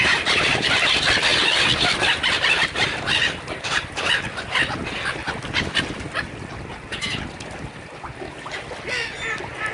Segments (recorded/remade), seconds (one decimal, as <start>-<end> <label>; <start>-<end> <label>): 0.0-9.7 recorded